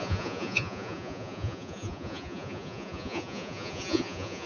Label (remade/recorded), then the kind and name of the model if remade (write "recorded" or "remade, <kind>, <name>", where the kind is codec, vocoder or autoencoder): remade, vocoder, Vocos